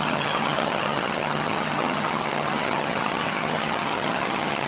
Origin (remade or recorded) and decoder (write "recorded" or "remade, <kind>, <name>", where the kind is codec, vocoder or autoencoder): remade, vocoder, HiFi-GAN